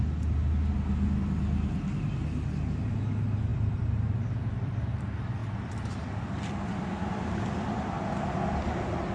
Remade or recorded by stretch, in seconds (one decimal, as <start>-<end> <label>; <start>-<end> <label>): 0.0-3.5 recorded; 3.5-5.0 remade; 5.0-5.4 recorded; 5.4-6.6 remade; 6.6-9.1 recorded